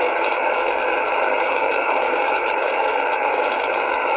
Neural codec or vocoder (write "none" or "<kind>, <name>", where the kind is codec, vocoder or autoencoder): codec, DAC